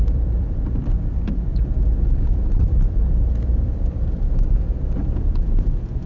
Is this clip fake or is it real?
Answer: fake